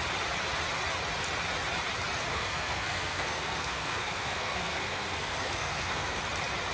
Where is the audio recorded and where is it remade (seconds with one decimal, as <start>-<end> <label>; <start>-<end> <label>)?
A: 0.0-2.3 recorded; 2.3-6.2 remade; 6.2-6.7 recorded